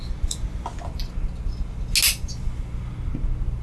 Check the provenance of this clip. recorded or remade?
recorded